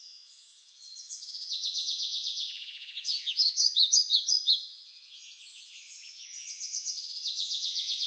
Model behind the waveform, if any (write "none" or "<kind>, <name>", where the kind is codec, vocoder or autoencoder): vocoder, Vocos